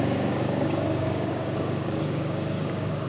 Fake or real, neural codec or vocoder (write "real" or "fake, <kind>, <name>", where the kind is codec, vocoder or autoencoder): fake, codec, DAC